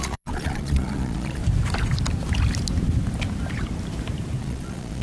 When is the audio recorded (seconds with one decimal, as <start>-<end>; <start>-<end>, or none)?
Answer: 1.4-4.4